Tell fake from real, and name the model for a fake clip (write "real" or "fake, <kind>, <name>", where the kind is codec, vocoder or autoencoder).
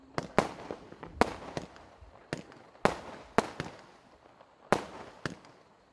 real